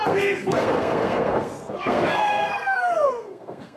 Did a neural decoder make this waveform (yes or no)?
yes